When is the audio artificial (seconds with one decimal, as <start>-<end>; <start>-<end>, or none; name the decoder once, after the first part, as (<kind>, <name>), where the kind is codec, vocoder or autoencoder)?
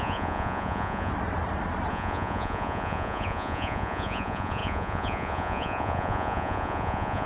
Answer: 0.0-1.1 (vocoder, Vocos); 1.9-7.3